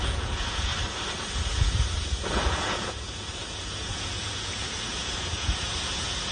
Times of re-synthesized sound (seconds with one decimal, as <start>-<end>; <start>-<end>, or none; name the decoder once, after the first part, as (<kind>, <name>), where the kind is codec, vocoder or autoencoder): 0.0-0.7 (vocoder, Vocos); 1.3-6.3